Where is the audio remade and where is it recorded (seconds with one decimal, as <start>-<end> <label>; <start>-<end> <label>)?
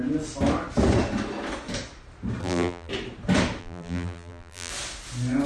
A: 0.0-2.4 recorded; 2.4-2.9 remade; 2.9-3.6 recorded; 3.6-4.7 remade; 4.7-5.5 recorded